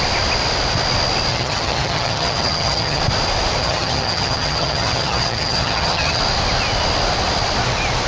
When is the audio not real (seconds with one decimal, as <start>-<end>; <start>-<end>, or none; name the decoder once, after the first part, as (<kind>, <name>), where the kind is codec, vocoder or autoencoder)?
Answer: 1.3-3.0 (vocoder, HiFi-GAN); 3.6-6.2